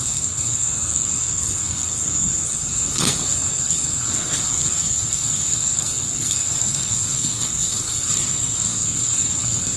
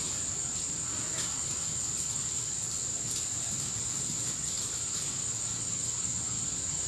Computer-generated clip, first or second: first